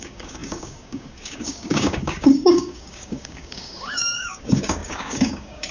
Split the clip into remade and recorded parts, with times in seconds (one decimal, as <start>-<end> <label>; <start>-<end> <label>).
0.0-5.7 remade